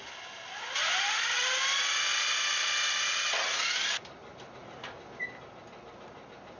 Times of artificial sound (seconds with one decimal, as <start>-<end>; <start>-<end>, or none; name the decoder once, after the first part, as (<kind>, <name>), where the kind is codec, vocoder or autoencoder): none